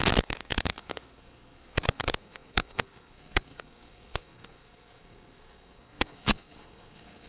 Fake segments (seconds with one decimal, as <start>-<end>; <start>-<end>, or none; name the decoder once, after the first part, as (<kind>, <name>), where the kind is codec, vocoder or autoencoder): 0.0-7.3 (codec, SNAC)